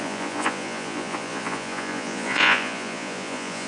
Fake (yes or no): yes